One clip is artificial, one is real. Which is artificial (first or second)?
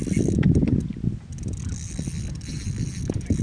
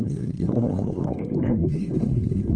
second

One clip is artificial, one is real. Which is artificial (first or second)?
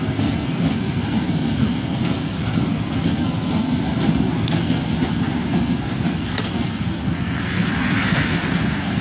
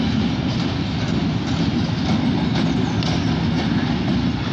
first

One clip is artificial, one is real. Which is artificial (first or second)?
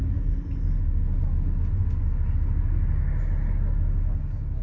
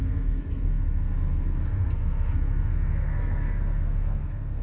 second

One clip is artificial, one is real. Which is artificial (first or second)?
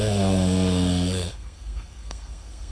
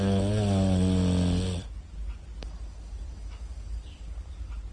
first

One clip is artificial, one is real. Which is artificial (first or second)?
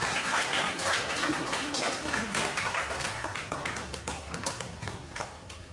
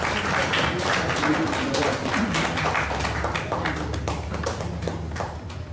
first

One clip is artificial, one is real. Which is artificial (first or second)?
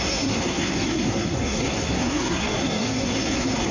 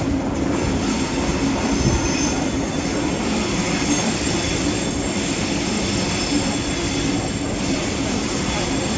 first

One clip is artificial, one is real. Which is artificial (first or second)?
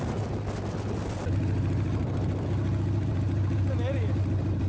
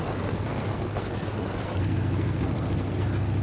second